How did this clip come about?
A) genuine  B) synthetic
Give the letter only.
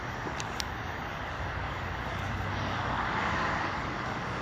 B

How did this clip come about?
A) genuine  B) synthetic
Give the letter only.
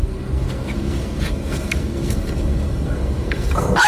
B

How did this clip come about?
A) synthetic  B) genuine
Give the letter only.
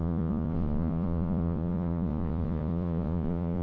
A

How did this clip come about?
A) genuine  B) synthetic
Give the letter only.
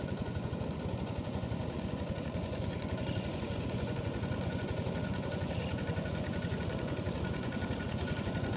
B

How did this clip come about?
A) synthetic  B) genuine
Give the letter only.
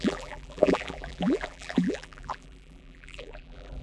A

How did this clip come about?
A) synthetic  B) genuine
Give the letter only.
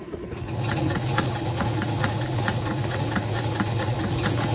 A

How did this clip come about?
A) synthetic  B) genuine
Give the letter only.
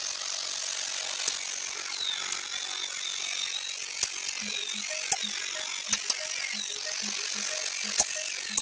B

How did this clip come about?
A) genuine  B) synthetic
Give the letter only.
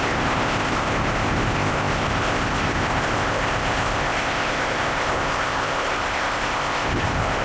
B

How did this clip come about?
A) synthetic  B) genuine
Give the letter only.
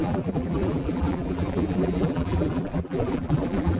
A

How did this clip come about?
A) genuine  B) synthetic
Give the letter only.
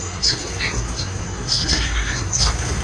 B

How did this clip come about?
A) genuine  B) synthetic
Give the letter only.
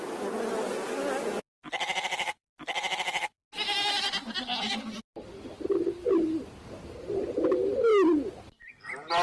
A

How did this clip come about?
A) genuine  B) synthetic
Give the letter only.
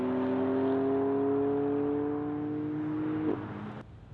A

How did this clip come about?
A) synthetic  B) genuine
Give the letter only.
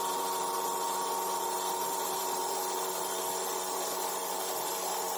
A